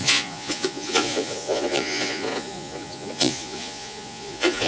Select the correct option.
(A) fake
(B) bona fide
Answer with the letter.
A